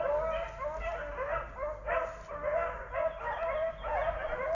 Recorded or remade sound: recorded